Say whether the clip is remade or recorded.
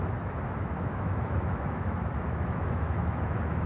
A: remade